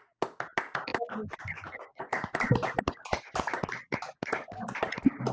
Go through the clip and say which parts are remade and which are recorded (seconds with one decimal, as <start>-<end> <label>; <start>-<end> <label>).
0.0-1.9 recorded; 1.9-2.9 remade; 2.9-5.3 recorded